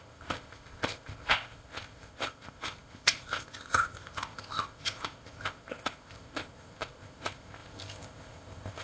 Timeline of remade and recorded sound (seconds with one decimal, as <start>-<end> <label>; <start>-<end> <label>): 0.0-8.8 remade